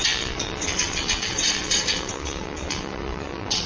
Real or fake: fake